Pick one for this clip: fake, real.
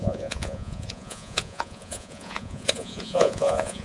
fake